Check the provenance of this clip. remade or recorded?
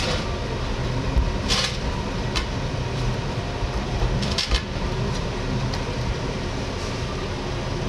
remade